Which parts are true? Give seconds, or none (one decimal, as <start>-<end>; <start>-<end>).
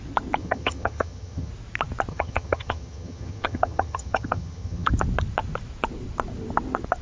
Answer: 0.0-0.4; 1.5-2.1; 4.9-7.0